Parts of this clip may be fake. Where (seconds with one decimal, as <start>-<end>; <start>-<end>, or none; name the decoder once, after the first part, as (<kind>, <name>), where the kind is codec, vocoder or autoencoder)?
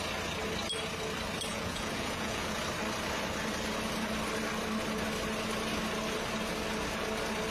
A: 1.5-2.6 (vocoder, Vocos)